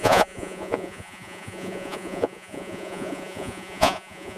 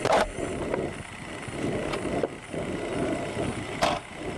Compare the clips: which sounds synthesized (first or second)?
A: first